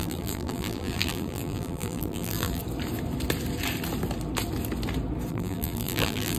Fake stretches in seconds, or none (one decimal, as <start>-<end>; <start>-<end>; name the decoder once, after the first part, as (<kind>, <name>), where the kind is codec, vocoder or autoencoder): 0.0-2.6 (vocoder, BigVGAN v2); 5.3-6.4

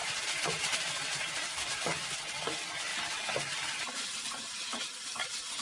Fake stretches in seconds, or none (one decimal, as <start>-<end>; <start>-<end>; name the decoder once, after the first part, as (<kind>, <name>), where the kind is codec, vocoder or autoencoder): 0.0-2.2 (vocoder, BigVGAN v2); 2.9-4.9